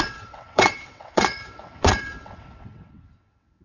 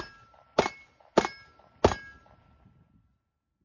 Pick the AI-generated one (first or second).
first